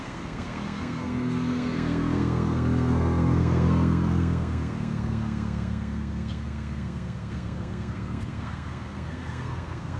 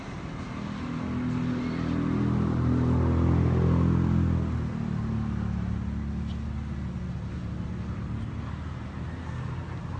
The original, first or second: second